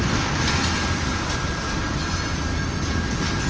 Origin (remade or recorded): recorded